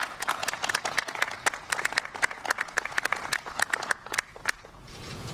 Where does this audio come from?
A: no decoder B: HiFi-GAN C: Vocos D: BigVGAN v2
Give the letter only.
C